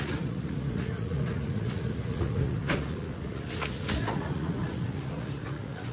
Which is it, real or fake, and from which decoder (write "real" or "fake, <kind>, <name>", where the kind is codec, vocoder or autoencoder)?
fake, vocoder, Vocos